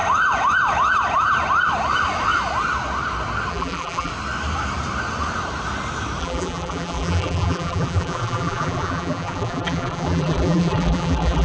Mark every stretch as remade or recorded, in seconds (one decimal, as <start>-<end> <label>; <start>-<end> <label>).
0.0-3.5 recorded; 3.5-4.1 remade; 4.1-6.2 recorded; 6.2-11.4 remade